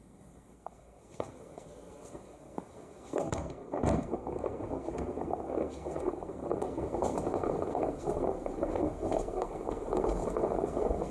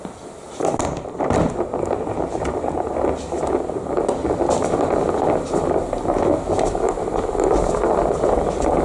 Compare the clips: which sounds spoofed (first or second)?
first